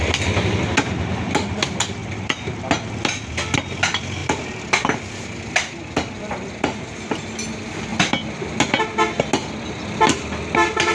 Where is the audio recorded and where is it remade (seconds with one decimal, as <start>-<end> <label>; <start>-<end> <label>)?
0.0-10.9 recorded